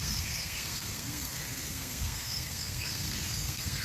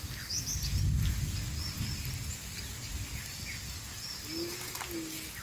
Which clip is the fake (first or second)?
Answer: first